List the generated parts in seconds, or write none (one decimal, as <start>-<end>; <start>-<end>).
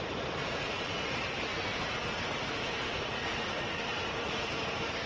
0.4-1.0; 1.5-4.5